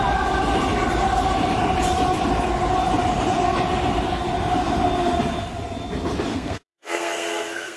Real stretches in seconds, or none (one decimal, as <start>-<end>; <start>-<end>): 0.0-6.3